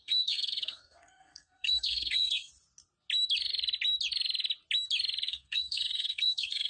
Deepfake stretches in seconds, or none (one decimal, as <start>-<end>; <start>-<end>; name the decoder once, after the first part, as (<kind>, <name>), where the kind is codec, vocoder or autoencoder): 0.0-2.5 (codec, SNAC); 5.3-6.7